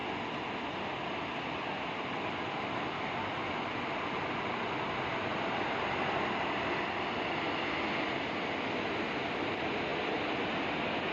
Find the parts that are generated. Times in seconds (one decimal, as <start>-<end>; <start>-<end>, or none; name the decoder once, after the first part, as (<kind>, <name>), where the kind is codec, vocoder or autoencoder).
none